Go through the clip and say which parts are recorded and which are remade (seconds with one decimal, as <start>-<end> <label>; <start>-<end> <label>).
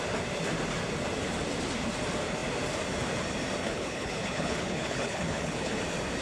0.0-3.6 recorded; 3.6-5.8 remade; 5.8-6.2 recorded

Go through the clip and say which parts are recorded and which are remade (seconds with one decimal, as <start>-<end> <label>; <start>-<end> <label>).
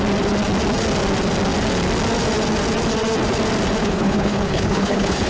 0.0-3.8 recorded; 3.8-5.3 remade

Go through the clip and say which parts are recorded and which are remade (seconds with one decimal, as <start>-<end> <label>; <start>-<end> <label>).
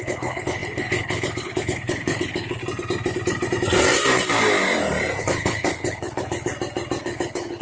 0.0-2.6 remade; 2.6-5.2 recorded; 5.2-6.5 remade; 6.5-7.0 recorded; 7.0-7.6 remade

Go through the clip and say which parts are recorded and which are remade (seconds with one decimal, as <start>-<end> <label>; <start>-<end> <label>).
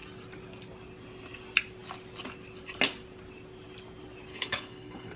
0.0-4.3 recorded; 4.3-5.2 remade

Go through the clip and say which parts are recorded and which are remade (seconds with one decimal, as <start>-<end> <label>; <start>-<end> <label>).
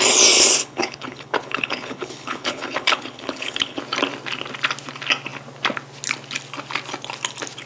0.0-0.6 recorded; 0.6-3.8 remade; 3.8-7.7 recorded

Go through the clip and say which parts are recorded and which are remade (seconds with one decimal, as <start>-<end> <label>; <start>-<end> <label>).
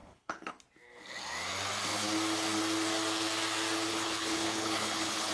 0.0-0.5 remade; 0.5-3.9 recorded; 3.9-5.3 remade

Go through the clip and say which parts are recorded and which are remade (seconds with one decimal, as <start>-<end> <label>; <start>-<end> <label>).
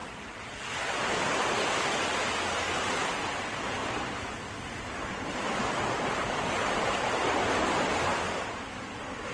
0.0-9.3 recorded